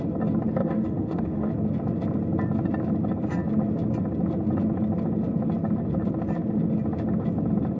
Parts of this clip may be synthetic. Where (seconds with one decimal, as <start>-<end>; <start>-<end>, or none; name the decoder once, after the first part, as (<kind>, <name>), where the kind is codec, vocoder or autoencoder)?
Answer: 0.6-1.5 (autoencoder, DAC-VAE)